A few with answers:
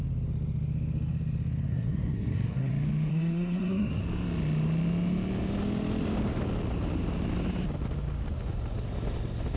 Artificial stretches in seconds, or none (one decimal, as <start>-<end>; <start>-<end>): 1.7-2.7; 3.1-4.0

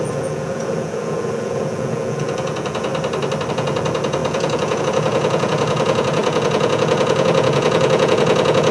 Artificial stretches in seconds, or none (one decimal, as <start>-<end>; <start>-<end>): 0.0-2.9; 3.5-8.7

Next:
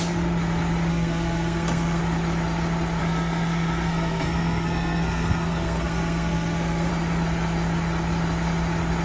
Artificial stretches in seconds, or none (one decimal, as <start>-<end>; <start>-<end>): 0.9-2.0; 3.0-6.9

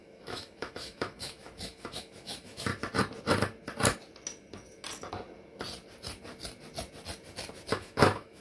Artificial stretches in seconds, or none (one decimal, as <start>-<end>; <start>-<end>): 0.0-2.7; 7.7-8.4

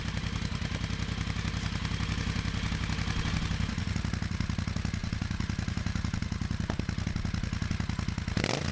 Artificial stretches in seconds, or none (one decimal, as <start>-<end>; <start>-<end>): 5.0-6.2

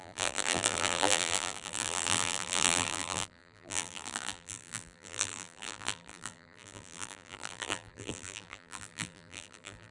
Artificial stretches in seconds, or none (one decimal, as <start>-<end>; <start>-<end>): 0.0-9.9